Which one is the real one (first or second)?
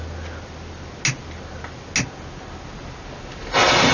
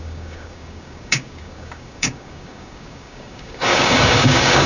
first